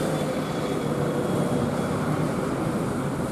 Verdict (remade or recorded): recorded